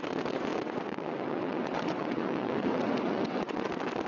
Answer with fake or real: fake